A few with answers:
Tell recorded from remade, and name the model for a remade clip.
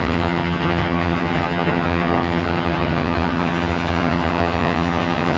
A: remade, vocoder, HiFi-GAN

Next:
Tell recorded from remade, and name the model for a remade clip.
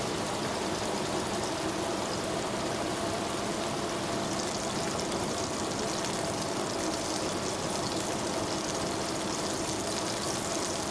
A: recorded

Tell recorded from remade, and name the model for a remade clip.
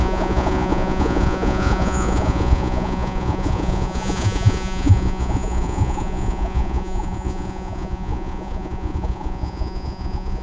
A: remade, vocoder, Vocos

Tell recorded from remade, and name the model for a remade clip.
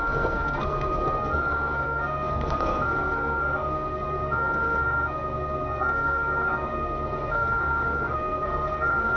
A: remade, codec, SNAC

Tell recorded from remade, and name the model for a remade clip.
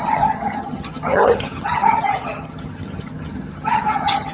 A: remade, vocoder, HiFi-GAN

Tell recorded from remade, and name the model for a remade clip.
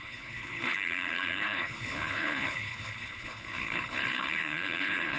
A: remade, codec, HILCodec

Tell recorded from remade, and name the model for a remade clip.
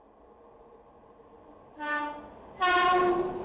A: recorded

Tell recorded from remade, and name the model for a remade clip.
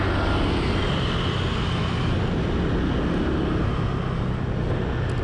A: recorded